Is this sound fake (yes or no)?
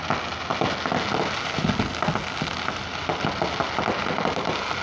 no